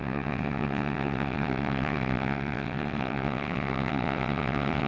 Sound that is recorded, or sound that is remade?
remade